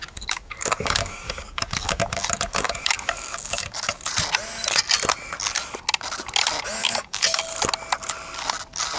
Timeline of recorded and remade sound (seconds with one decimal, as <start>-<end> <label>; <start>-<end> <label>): 0.0-4.0 remade; 4.0-6.8 recorded; 6.8-7.4 remade; 7.4-9.0 recorded